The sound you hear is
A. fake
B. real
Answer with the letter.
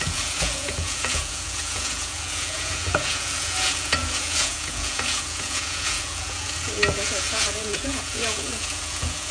A